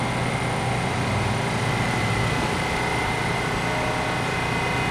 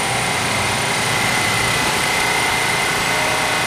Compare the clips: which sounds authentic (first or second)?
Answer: first